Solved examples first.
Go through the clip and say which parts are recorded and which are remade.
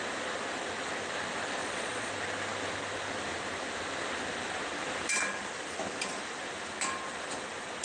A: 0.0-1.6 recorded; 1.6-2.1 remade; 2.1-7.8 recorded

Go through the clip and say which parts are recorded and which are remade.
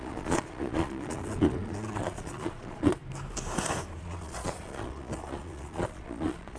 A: 0.0-3.0 remade; 3.0-4.0 recorded; 4.0-6.6 remade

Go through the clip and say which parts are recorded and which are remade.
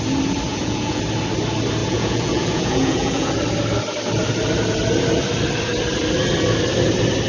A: 0.0-0.5 recorded; 0.5-1.0 remade; 1.0-1.8 recorded; 1.8-3.3 remade; 3.3-7.3 recorded